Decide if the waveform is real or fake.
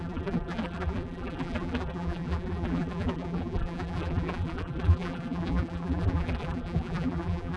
fake